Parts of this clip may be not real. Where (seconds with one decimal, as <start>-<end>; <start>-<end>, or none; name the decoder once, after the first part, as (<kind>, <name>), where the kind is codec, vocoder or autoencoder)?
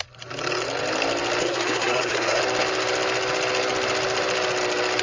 1.4-2.4 (codec, SNAC)